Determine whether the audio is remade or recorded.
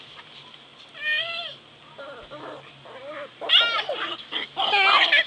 recorded